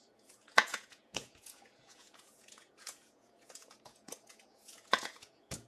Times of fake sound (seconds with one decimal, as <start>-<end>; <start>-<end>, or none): 0.0-5.7